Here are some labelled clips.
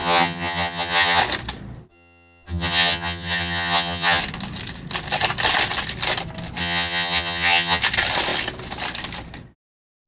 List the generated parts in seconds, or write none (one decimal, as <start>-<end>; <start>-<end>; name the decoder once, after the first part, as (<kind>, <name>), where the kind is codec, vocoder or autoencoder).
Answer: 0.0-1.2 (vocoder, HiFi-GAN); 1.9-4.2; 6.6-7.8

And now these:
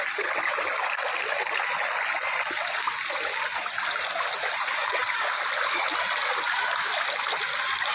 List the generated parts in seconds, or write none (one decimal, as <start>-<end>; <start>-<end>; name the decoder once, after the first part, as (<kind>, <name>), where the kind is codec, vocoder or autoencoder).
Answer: none

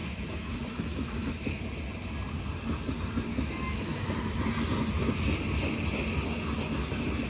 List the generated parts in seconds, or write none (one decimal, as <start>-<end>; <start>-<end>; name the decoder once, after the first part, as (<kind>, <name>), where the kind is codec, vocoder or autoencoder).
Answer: 0.0-1.6 (autoencoder, DAC-VAE); 3.3-4.0